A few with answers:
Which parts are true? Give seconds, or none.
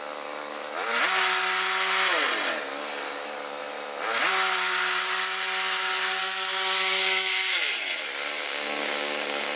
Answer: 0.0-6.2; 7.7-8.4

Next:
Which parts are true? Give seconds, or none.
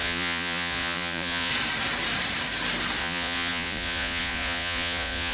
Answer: 1.5-3.0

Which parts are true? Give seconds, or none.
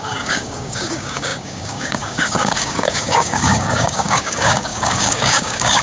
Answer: none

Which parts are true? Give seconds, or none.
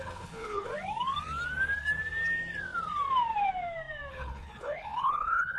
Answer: 0.7-4.1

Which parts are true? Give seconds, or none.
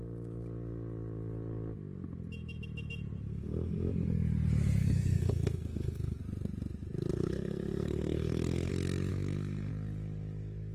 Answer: 0.0-3.3; 3.9-4.8; 6.2-7.1; 8.7-9.1; 9.7-10.7